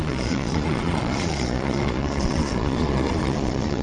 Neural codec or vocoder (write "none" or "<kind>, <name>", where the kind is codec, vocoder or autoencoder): vocoder, Vocos